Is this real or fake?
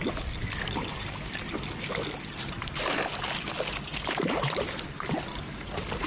real